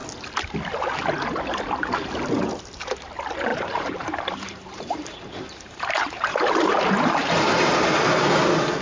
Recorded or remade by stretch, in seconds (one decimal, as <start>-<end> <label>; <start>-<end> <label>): 0.0-3.5 recorded; 3.5-8.0 remade; 8.0-8.8 recorded